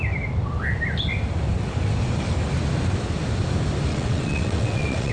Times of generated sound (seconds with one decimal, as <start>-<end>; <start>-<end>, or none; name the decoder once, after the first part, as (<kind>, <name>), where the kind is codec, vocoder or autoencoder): 3.9-5.1 (vocoder, WaveNeXt)